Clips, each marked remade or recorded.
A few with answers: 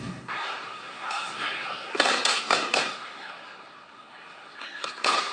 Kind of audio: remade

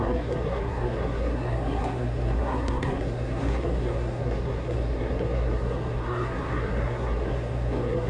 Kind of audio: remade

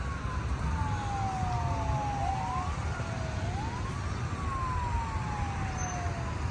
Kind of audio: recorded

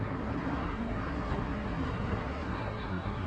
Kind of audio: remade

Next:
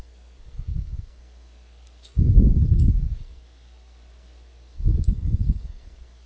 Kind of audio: remade